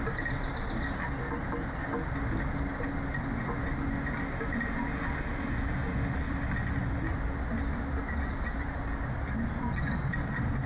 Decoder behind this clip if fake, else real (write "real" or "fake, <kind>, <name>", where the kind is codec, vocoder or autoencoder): real